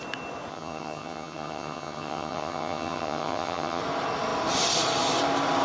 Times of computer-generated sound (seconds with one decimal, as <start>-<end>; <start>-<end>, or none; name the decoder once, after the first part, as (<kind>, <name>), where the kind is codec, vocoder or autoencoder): 0.5-3.8 (vocoder, HiFi-GAN)